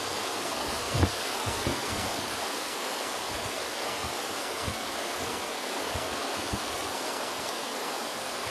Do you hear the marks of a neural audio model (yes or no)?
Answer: yes